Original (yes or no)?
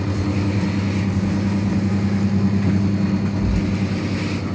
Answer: yes